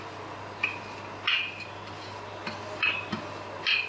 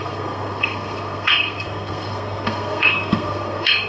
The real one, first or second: first